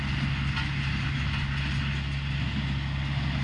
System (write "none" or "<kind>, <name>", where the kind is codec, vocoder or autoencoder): none